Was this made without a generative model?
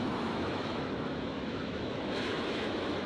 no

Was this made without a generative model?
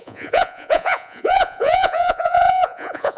no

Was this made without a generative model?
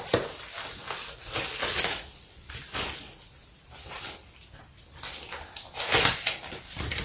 yes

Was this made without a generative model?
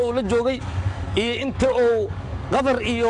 no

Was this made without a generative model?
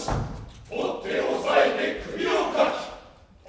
yes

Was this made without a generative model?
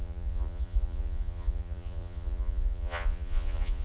no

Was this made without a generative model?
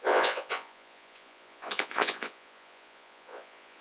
no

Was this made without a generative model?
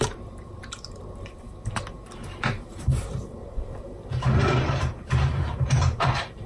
no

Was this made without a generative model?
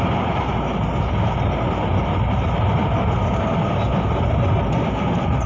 yes